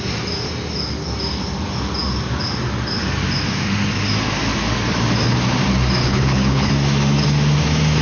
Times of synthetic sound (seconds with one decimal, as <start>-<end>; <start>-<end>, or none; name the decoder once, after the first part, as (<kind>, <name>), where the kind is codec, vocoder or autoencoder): 6.0-6.7 (codec, HILCodec)